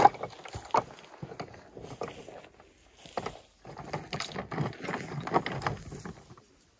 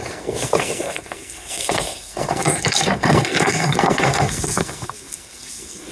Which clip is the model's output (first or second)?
second